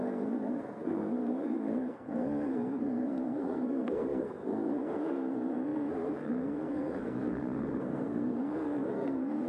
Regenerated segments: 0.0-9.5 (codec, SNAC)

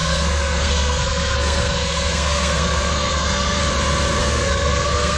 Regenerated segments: 0.0-3.6 (codec, SNAC); 4.2-5.2

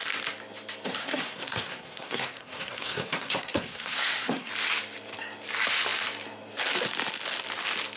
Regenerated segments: 1.0-4.5 (codec, SNAC)

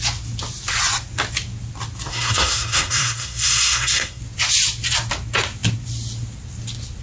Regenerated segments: 2.1-4.2 (codec, SNAC)

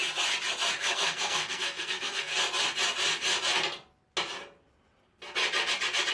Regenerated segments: 0.7-2.3 (codec, SNAC)

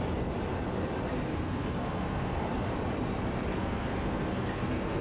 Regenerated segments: 1.3-2.4 (codec, SNAC); 3.5-5.0